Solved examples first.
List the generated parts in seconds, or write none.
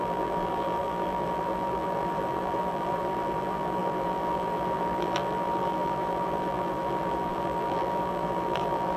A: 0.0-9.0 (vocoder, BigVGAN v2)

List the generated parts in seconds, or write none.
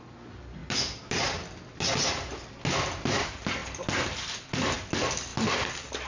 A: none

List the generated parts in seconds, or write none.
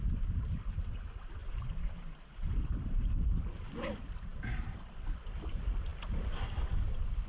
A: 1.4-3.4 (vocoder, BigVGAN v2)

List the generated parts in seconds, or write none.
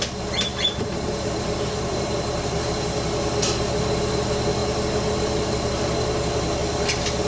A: 0.5-2.6 (vocoder, BigVGAN v2); 6.6-7.3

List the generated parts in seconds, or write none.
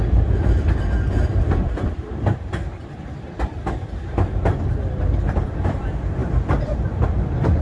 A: 0.0-7.6 (vocoder, BigVGAN v2)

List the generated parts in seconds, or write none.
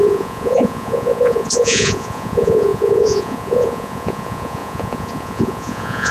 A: 0.0-6.1 (vocoder, Vocos)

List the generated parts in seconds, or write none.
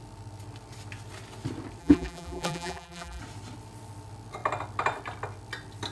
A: 1.8-3.2 (vocoder, BigVGAN v2)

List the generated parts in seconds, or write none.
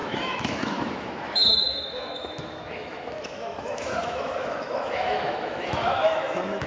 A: 0.0-6.7 (autoencoder, DAC-VAE)